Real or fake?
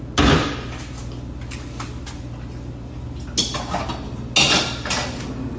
real